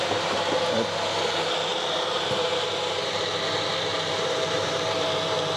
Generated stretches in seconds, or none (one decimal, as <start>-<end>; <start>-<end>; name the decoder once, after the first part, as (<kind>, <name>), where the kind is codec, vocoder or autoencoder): 1.7-3.2 (vocoder, BigVGAN v2); 3.9-5.1

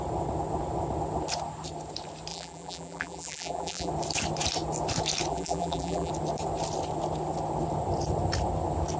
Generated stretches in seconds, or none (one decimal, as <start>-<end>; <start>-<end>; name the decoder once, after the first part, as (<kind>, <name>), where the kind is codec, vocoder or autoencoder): 2.3-3.9 (vocoder, BigVGAN v2); 5.3-6.1

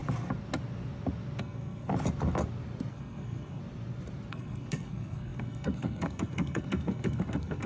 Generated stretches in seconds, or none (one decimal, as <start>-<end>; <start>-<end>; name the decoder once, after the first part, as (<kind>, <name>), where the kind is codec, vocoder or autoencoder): 1.4-1.9 (codec, SNAC); 2.9-3.6; 4.3-7.7

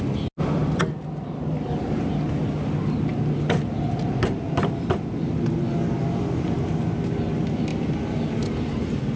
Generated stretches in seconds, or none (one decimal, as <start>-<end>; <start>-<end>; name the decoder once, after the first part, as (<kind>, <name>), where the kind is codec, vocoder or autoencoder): none

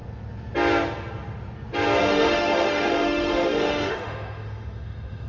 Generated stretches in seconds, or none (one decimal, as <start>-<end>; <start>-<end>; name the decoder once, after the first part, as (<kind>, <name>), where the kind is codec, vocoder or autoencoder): 2.0-5.3 (autoencoder, DAC-VAE)

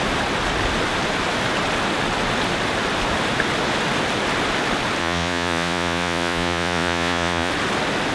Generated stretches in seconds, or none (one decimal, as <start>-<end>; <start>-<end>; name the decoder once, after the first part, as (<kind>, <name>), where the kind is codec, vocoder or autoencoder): 5.0-7.5 (vocoder, Vocos)

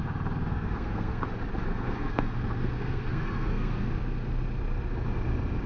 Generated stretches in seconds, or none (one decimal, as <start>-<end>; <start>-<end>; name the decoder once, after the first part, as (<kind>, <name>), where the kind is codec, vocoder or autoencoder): 0.5-1.2 (codec, SNAC); 1.7-3.9